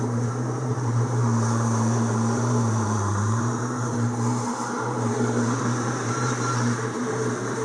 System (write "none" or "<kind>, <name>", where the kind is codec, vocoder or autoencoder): vocoder, BigVGAN v2